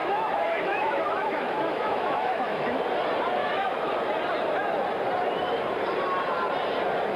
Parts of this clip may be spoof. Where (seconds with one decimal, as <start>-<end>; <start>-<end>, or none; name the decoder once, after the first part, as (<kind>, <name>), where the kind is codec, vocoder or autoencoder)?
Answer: 0.0-2.8 (autoencoder, DAC-VAE); 3.4-3.9